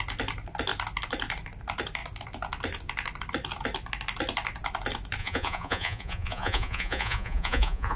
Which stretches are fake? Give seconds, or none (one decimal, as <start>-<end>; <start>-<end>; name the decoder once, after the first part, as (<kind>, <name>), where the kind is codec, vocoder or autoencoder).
5.2-8.0 (vocoder, Vocos)